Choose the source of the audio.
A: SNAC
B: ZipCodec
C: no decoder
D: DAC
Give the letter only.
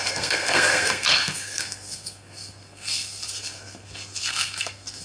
A